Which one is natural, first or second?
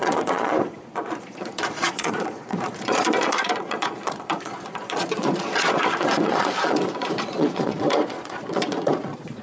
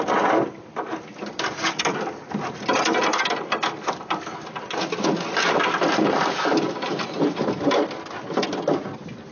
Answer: second